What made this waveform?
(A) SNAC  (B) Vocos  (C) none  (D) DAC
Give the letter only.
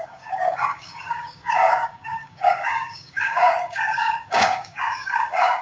D